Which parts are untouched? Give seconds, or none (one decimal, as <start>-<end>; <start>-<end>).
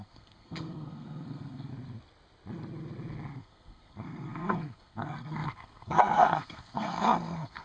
1.7-3.4